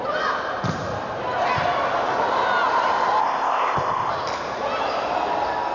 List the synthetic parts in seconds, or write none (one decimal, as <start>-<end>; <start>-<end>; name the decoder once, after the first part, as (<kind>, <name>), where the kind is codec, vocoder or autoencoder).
3.2-4.1 (codec, ZipCodec)